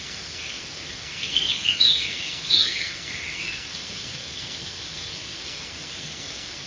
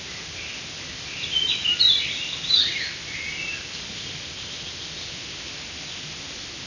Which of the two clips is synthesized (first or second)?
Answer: first